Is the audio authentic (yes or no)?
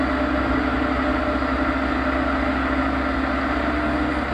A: yes